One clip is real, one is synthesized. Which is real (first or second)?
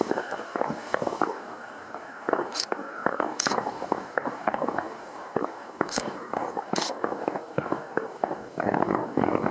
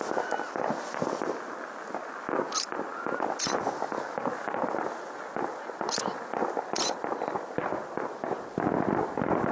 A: second